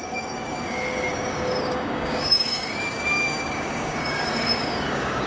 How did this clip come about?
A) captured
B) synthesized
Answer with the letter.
B